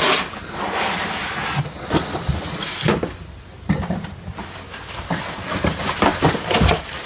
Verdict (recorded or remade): recorded